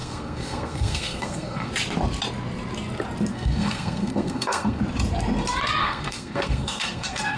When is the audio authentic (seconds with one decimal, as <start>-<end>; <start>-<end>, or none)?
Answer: 1.7-3.3; 4.8-5.8